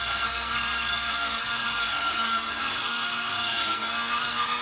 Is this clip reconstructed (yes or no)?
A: yes